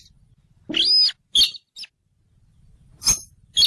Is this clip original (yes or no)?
yes